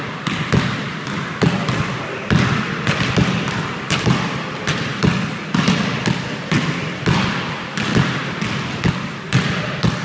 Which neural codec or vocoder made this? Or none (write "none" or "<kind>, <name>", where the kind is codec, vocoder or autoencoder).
none